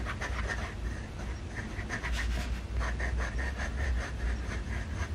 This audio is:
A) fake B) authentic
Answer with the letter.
B